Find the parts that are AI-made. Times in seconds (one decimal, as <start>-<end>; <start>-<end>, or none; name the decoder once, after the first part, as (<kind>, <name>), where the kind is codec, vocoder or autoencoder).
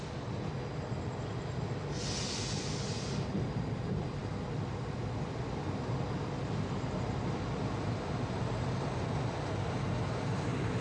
none